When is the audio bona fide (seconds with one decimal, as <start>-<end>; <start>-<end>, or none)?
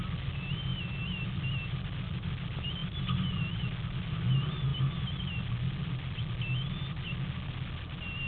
0.0-8.3